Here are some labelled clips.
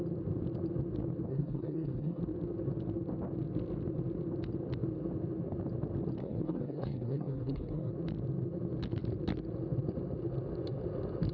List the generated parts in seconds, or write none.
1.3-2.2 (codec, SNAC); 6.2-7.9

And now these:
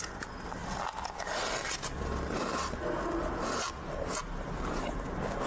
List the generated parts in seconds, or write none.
none

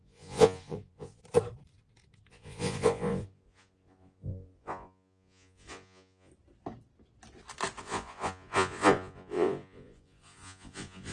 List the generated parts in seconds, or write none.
0.0-1.2 (vocoder, Vocos); 2.3-6.3; 7.8-11.1

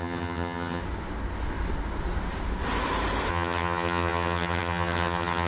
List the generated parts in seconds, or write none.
0.0-0.8 (vocoder, HiFi-GAN); 3.3-5.5

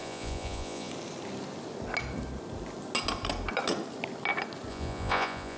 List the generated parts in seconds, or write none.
0.0-0.9 (vocoder, Vocos); 4.7-5.6

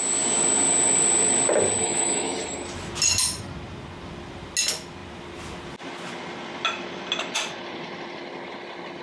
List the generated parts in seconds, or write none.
1.8-2.4 (autoencoder, DAC-VAE)

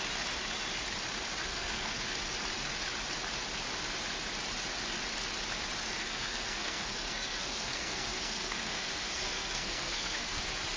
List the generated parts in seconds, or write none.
1.5-2.0 (codec, SNAC); 5.9-10.4